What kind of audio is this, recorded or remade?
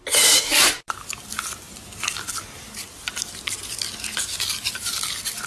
recorded